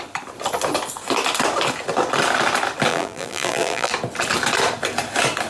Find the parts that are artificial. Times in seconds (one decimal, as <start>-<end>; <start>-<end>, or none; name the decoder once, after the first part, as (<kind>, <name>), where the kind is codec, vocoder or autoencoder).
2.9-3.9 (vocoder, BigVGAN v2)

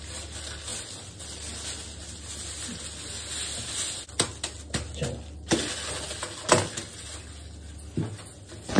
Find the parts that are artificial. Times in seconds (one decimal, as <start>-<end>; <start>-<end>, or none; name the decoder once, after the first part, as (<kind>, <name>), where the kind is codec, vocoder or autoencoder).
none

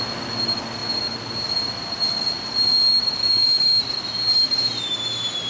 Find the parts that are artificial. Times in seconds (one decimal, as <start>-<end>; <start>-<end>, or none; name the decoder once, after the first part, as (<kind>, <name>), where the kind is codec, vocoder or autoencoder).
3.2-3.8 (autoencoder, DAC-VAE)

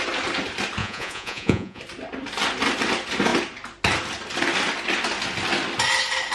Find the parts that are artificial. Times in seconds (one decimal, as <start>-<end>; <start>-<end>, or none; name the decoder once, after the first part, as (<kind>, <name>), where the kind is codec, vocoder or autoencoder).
0.8-1.8 (vocoder, Vocos)

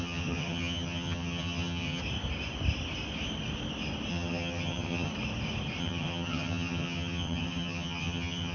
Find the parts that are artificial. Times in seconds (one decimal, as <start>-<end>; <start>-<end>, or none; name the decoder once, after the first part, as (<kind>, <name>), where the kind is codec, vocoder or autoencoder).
0.0-2.0 (vocoder, HiFi-GAN); 4.1-5.1; 5.8-8.5